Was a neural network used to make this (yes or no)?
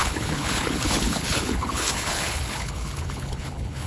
yes